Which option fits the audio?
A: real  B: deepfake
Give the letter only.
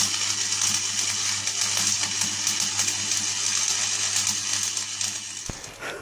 A